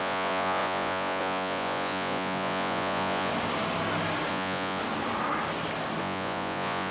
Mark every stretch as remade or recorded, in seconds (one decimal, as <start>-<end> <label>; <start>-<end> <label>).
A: 0.0-3.3 remade; 3.3-4.3 recorded; 4.3-4.8 remade; 4.8-6.0 recorded; 6.0-6.9 remade